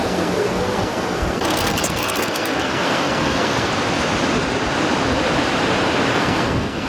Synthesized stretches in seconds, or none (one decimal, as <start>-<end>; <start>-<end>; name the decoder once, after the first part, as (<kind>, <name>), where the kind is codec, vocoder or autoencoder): 0.0-3.7 (codec, SNAC); 6.1-6.9